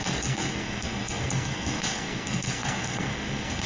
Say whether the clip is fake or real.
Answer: fake